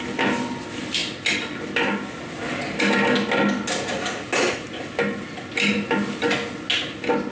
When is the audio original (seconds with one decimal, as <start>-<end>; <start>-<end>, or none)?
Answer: 0.0-7.3